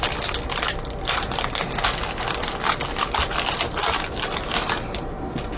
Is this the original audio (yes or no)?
yes